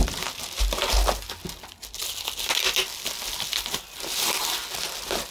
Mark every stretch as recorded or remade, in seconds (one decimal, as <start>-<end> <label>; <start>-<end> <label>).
0.0-5.3 recorded